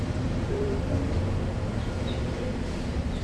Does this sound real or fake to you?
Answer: fake